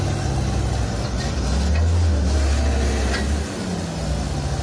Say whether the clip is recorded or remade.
recorded